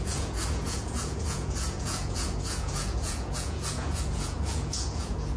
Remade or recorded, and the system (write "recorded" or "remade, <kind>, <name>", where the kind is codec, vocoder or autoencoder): remade, vocoder, Vocos